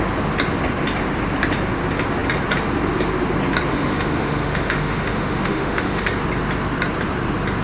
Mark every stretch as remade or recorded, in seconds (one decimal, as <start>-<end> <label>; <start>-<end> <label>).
0.0-3.7 recorded; 3.7-6.1 remade; 6.1-7.6 recorded